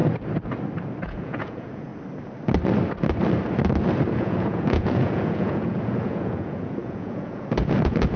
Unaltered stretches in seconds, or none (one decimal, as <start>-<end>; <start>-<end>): 0.0-1.0; 1.9-4.2